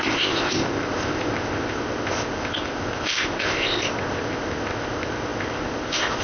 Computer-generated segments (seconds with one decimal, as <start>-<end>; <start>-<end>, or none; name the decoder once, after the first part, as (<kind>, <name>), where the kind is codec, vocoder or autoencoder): 0.0-6.2 (codec, ZipCodec)

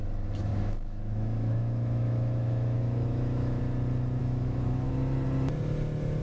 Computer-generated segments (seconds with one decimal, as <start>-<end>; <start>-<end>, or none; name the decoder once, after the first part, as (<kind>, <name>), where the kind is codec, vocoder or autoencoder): 0.5-3.6 (autoencoder, DAC-VAE); 4.2-4.9